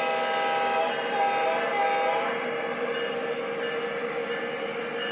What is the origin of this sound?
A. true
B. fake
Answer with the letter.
A